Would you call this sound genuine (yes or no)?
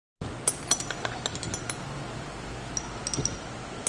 yes